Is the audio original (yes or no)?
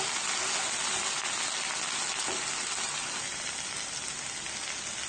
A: yes